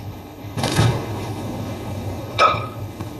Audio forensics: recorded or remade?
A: remade